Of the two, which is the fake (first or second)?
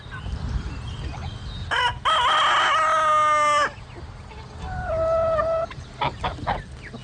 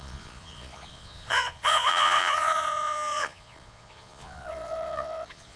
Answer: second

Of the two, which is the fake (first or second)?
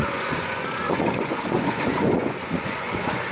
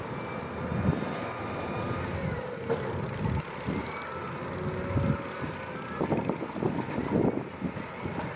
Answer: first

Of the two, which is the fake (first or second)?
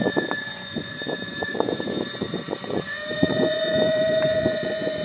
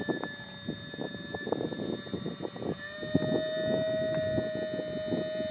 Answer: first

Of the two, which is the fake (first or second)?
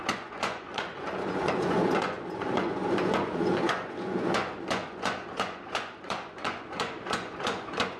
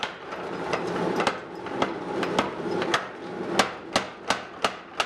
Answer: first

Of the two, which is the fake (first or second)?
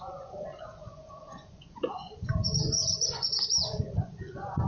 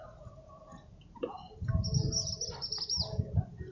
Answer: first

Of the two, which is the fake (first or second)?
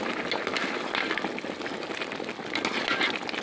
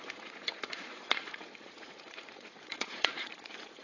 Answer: second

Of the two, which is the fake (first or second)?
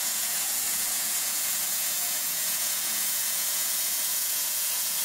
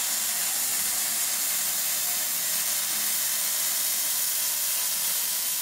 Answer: first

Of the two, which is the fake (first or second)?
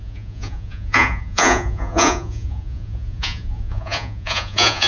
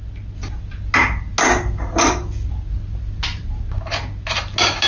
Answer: first